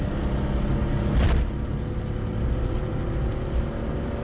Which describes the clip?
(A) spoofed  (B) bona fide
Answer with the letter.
B